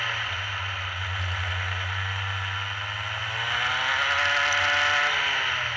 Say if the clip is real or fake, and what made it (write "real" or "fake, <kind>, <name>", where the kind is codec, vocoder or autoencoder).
real